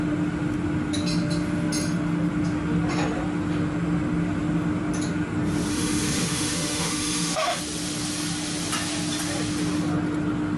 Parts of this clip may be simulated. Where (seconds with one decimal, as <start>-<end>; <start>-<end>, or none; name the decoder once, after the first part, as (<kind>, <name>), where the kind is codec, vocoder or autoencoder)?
5.7-7.6 (autoencoder, DAC-VAE)